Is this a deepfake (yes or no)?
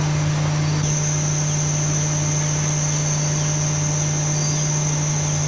no